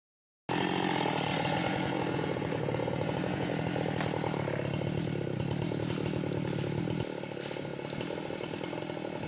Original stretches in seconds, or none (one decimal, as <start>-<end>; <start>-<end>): 0.0-1.3; 3.5-9.3